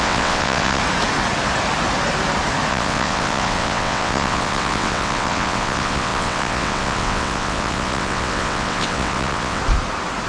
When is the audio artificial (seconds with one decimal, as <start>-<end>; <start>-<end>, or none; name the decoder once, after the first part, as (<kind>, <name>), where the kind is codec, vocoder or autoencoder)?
0.0-0.8 (vocoder, WaveNeXt); 2.7-9.6